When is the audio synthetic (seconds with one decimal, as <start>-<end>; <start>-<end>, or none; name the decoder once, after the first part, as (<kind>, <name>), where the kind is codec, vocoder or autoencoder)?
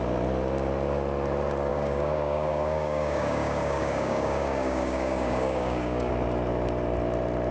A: 1.7-6.1 (codec, DAC)